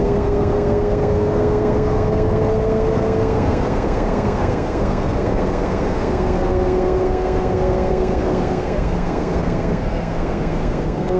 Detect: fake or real fake